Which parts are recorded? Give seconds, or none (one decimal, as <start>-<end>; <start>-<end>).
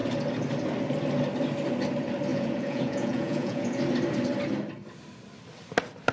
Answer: 0.0-2.3; 3.8-6.1